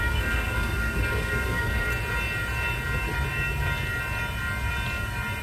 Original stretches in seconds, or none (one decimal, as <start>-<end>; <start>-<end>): 1.9-5.4